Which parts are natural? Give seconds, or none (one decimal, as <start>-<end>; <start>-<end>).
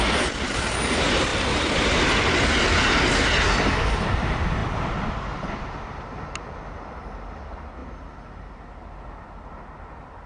0.0-10.3